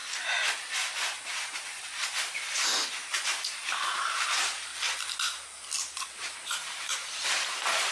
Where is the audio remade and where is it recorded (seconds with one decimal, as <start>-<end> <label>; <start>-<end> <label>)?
0.0-1.4 recorded; 1.4-2.7 remade; 2.7-3.8 recorded; 3.8-4.7 remade; 4.7-6.1 recorded; 6.1-7.9 remade